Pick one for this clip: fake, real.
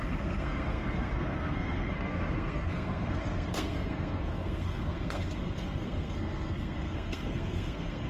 fake